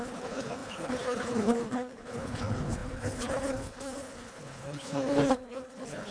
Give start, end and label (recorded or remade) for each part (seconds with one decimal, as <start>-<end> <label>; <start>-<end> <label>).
0.0-6.1 remade